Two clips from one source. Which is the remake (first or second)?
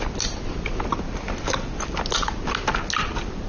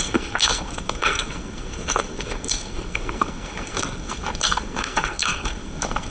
second